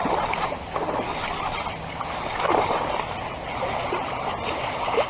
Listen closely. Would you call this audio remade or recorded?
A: recorded